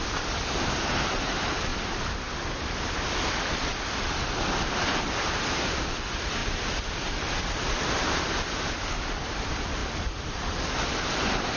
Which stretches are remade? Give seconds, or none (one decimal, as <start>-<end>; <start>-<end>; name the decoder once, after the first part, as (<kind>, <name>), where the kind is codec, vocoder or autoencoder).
0.0-1.7 (vocoder, BigVGAN v2); 2.5-3.7; 4.9-11.6